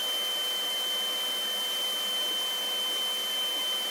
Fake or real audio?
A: real